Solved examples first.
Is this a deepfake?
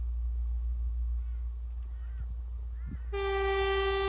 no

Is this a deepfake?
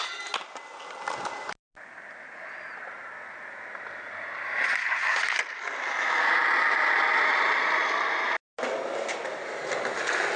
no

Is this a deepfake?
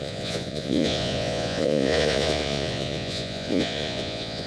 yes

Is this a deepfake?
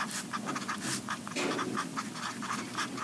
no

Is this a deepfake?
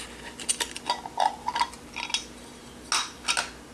no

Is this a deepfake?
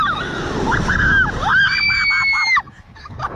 no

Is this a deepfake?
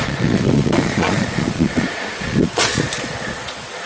yes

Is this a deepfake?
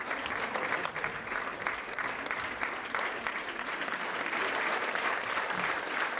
no